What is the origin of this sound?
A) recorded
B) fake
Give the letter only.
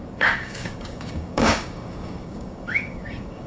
B